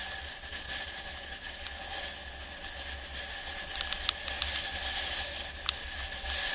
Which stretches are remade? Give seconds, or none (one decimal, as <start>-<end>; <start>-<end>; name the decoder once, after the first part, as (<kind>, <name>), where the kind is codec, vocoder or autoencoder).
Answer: none